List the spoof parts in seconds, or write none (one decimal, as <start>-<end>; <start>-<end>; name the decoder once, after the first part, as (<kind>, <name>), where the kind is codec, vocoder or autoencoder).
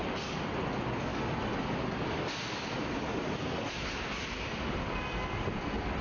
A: none